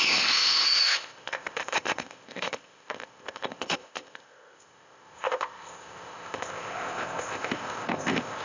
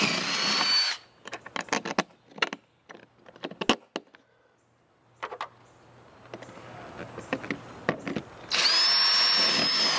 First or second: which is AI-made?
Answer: first